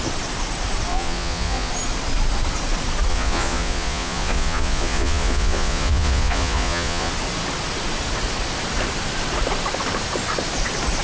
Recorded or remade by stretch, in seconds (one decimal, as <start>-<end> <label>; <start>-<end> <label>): 0.0-0.9 recorded; 0.9-1.7 remade; 1.7-3.1 recorded; 3.1-7.1 remade; 7.1-11.0 recorded

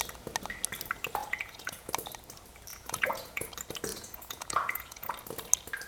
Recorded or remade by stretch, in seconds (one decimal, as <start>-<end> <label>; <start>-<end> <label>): 0.0-1.2 recorded; 1.2-1.9 remade; 1.9-2.7 recorded; 2.7-3.5 remade; 3.5-3.9 recorded; 3.9-5.1 remade; 5.1-5.9 recorded

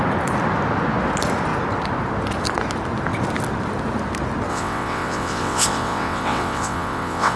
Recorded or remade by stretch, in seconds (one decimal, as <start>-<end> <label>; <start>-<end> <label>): 0.0-4.5 recorded; 4.5-7.4 remade

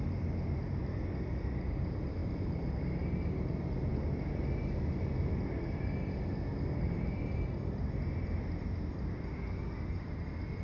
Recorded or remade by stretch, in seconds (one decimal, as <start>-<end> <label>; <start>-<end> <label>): 0.0-2.2 recorded; 2.2-2.9 remade; 2.9-10.6 recorded

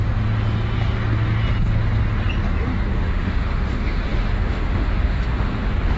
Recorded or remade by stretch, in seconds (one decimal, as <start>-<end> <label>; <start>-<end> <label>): 0.0-2.9 recorded; 2.9-6.0 remade

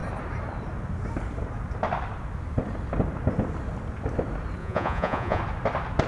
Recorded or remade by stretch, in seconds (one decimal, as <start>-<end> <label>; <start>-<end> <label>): 0.0-4.6 recorded; 4.6-5.4 remade; 5.4-6.1 recorded